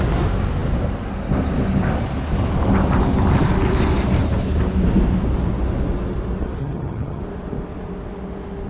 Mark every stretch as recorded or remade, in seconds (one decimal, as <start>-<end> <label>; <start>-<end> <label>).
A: 0.0-6.6 recorded; 6.6-7.2 remade; 7.2-8.7 recorded